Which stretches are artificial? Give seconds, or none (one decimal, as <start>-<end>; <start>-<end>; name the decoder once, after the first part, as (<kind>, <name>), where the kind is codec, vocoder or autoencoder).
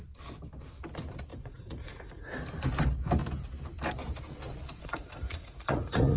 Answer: 1.3-2.3 (vocoder, Vocos); 4.8-6.2